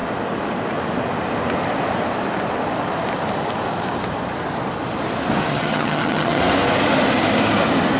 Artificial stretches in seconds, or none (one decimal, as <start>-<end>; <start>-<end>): 5.5-6.4

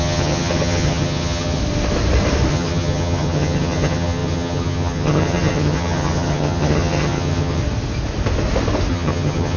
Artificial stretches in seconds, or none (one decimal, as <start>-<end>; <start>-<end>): 0.0-1.6; 2.5-7.6; 8.9-9.6

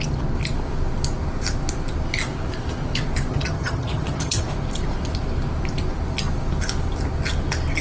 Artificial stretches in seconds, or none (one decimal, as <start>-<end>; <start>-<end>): 3.3-4.4

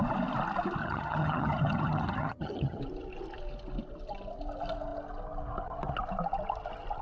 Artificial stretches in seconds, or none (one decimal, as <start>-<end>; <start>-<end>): 0.8-2.8